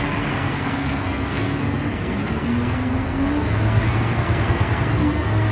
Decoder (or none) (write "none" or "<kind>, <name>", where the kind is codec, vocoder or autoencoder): codec, SNAC